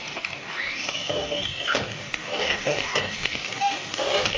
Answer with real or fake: fake